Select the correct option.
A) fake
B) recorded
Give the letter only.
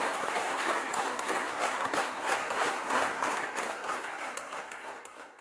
A